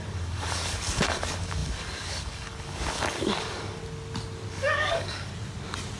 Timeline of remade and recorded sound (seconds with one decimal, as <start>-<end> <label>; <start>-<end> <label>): 0.0-3.8 remade; 3.8-4.5 recorded; 4.5-5.3 remade; 5.3-6.0 recorded